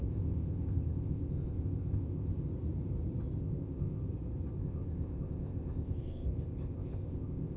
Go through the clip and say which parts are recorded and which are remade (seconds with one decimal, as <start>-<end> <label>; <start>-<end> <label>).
0.0-2.3 remade; 2.3-3.4 recorded; 3.4-4.0 remade; 4.0-4.6 recorded; 4.6-7.6 remade